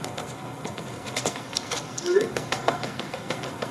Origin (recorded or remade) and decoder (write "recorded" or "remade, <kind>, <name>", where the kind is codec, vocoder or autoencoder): remade, codec, SNAC